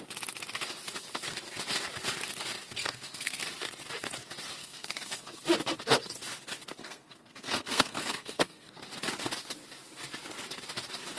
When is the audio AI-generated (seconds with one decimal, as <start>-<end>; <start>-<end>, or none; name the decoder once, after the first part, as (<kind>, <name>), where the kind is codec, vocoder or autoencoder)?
2.8-3.4 (codec, SNAC); 4.6-5.4; 6.8-8.7